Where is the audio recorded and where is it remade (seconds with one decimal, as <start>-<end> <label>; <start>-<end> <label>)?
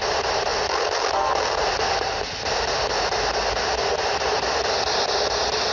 0.0-5.7 recorded